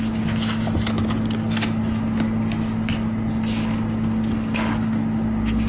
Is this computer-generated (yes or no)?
no